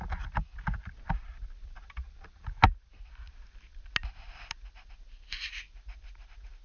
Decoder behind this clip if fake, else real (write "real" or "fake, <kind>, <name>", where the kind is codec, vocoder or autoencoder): real